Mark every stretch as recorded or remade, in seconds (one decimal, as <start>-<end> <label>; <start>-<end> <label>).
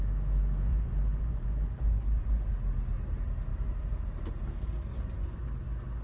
0.0-0.7 recorded; 0.7-2.5 remade; 2.5-4.9 recorded; 4.9-5.4 remade; 5.4-6.0 recorded